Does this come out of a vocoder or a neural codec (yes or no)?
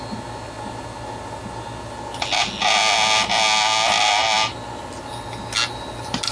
no